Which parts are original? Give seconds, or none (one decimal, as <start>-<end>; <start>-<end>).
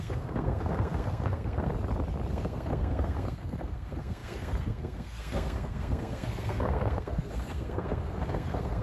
1.7-2.3